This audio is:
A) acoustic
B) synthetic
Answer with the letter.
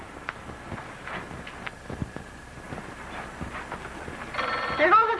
A